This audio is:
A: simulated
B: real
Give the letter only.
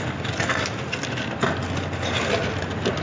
B